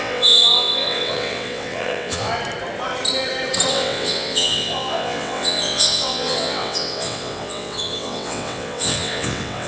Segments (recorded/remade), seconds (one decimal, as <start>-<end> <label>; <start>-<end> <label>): 0.0-2.3 remade; 2.3-3.7 recorded; 3.7-9.7 remade

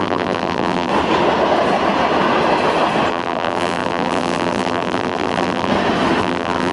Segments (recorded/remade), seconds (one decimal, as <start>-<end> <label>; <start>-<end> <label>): 0.0-0.9 remade; 0.9-3.1 recorded; 3.1-5.7 remade; 5.7-6.2 recorded; 6.2-6.7 remade

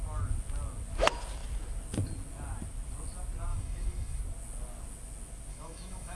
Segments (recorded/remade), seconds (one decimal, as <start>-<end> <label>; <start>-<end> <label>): 0.0-3.5 recorded; 3.5-4.2 remade; 4.2-5.5 recorded; 5.5-6.2 remade

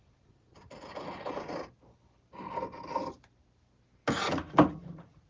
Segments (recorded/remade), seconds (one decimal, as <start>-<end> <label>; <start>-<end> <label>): 0.0-1.6 remade; 1.6-4.8 recorded; 4.8-5.3 remade

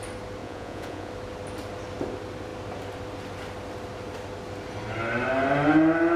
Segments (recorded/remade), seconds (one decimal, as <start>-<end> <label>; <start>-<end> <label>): 0.0-0.4 recorded; 0.4-1.1 remade; 1.1-6.2 recorded